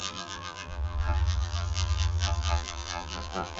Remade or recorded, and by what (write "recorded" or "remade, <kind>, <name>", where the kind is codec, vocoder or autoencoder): remade, vocoder, BigVGAN v2